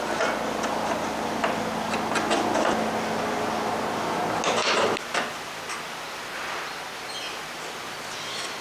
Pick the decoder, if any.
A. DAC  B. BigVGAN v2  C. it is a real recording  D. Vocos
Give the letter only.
C